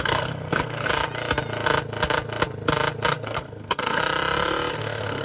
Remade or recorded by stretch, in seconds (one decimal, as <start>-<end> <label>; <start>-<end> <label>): 0.0-0.9 remade; 0.9-3.1 recorded; 3.1-4.0 remade; 4.0-4.7 recorded; 4.7-5.2 remade